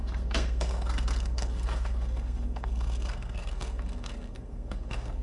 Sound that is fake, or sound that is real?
fake